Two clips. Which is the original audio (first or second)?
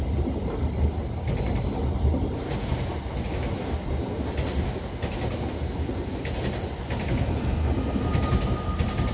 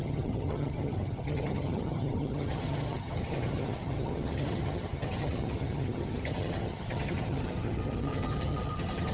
first